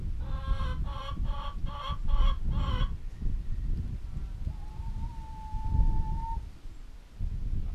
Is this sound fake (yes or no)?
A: no